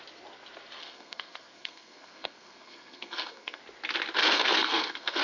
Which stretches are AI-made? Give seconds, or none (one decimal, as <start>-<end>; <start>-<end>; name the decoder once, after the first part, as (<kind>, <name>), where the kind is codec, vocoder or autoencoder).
0.8-3.6 (codec, SNAC); 4.2-5.2